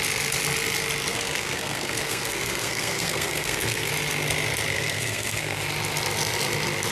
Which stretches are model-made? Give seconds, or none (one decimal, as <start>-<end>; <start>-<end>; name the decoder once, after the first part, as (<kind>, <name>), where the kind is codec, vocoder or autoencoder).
1.1-3.9 (codec, SNAC); 4.7-5.6